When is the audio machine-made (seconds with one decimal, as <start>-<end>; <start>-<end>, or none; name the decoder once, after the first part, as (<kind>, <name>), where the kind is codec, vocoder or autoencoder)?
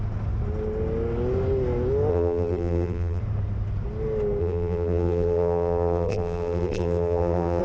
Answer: 2.1-3.2 (vocoder, BigVGAN v2); 4.4-7.6